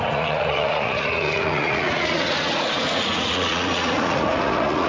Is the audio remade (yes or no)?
yes